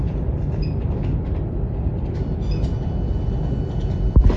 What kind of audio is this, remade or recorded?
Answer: recorded